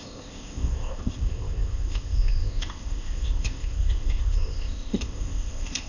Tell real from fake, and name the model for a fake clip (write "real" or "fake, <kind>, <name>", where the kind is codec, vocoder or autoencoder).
fake, codec, ZipCodec